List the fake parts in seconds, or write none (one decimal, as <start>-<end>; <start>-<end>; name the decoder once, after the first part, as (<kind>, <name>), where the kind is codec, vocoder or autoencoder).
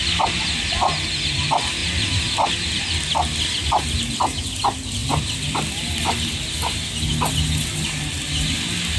none